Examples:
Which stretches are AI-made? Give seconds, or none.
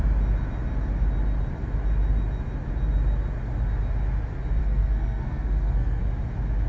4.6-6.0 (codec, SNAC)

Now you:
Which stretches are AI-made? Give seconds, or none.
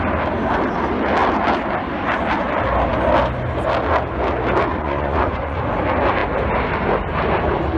4.7-5.6 (vocoder, Vocos)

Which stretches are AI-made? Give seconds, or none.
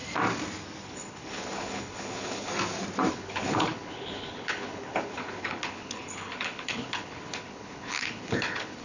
0.8-2.5 (codec, HILCodec); 3.1-8.8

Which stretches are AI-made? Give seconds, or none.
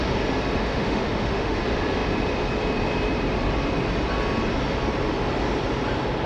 0.6-1.6 (autoencoder, DAC-VAE)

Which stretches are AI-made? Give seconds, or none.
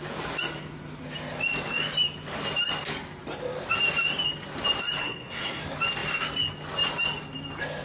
5.0-5.6 (codec, SNAC)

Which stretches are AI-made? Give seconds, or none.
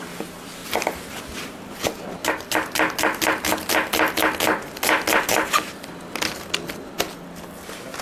0.6-1.2 (vocoder, BigVGAN v2)